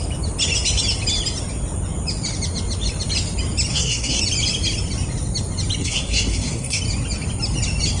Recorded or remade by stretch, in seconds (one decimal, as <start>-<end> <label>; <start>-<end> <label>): 0.0-3.7 recorded; 3.7-4.2 remade; 4.2-5.8 recorded; 5.8-6.8 remade; 6.8-8.0 recorded